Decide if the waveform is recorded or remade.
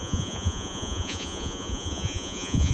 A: remade